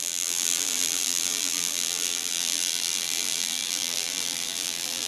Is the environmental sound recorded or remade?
remade